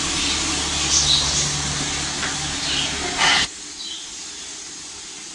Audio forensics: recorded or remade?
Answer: recorded